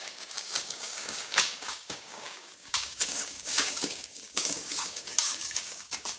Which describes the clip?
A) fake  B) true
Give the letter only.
A